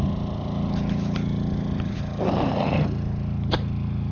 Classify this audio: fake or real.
real